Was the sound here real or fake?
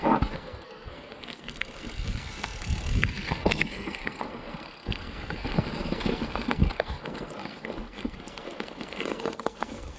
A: fake